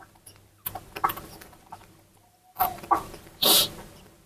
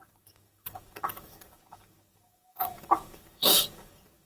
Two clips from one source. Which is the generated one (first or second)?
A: second